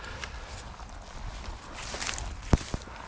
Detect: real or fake real